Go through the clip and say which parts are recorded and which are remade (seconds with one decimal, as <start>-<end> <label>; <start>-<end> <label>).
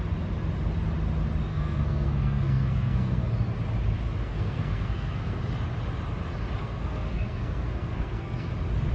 0.0-1.5 recorded; 1.5-3.3 remade; 3.3-4.2 recorded; 4.2-5.4 remade; 5.4-6.6 recorded; 6.6-8.5 remade; 8.5-8.9 recorded